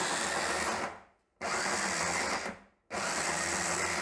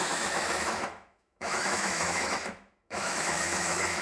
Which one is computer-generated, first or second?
second